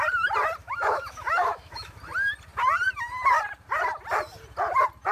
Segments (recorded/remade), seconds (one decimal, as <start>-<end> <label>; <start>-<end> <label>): 0.0-0.6 recorded; 0.6-2.0 remade; 2.0-5.1 recorded